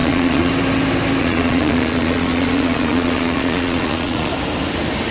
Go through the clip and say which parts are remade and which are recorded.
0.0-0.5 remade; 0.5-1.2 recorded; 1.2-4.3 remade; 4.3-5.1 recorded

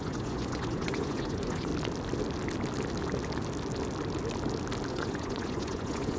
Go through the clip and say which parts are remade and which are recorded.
0.0-1.7 remade; 1.7-4.9 recorded; 4.9-6.2 remade

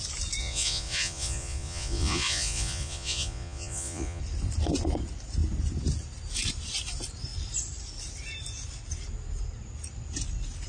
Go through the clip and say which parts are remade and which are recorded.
0.0-0.4 recorded; 0.4-4.2 remade; 4.2-10.7 recorded

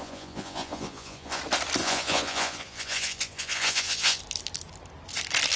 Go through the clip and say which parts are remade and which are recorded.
0.0-1.4 remade; 1.4-1.8 recorded; 1.8-4.2 remade; 4.2-5.6 recorded

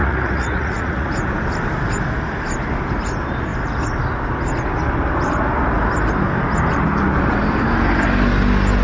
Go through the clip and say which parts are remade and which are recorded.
0.0-1.1 remade; 1.1-8.8 recorded

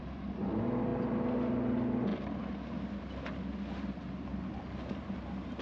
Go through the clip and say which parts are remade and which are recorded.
0.0-5.6 recorded

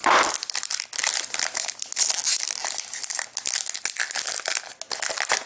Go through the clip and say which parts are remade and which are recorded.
0.0-5.5 recorded